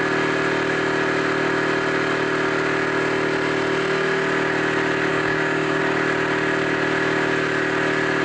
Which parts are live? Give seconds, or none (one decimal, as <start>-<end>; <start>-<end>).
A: 0.0-5.1; 5.8-8.2